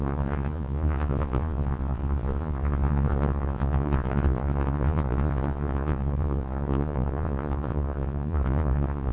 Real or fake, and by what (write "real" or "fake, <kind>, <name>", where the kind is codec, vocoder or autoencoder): fake, vocoder, Vocos